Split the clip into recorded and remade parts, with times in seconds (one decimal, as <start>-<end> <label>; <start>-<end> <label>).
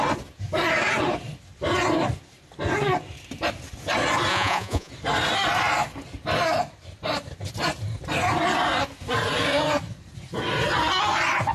0.0-4.3 recorded; 4.3-4.9 remade; 4.9-11.5 recorded